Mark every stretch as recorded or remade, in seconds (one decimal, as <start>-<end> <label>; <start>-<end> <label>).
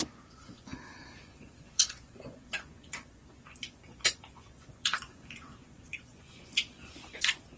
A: 0.0-7.6 remade